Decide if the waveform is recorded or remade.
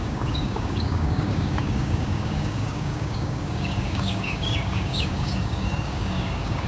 remade